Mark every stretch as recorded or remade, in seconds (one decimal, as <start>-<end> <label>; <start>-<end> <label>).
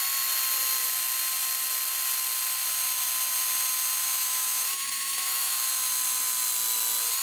0.0-4.0 recorded; 4.0-5.7 remade; 5.7-7.2 recorded